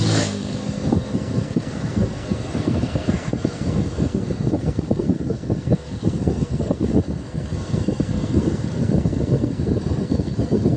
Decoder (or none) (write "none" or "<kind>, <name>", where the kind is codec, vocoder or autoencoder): codec, SNAC